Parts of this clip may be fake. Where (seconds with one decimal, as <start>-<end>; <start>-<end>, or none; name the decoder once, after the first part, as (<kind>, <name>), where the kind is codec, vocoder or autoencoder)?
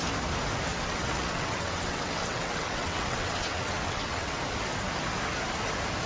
0.7-4.4 (vocoder, WaveNeXt)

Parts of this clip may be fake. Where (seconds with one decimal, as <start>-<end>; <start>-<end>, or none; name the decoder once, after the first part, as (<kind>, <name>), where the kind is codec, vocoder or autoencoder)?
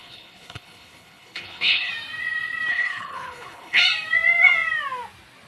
0.0-1.9 (codec, HILCodec); 2.7-3.8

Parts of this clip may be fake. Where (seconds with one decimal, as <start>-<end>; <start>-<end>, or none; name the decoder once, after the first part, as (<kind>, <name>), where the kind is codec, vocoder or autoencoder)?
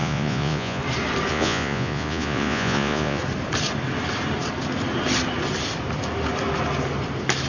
0.0-0.8 (vocoder, Vocos); 1.3-3.2